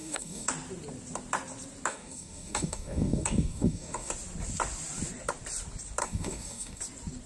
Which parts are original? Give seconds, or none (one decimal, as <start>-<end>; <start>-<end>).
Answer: 0.5-1.9; 4.1-6.0; 6.8-7.3